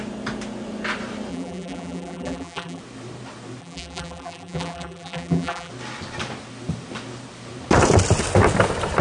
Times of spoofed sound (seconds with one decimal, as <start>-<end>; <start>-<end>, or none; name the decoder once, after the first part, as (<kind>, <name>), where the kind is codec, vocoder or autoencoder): 1.3-2.8 (vocoder, BigVGAN v2); 3.6-5.7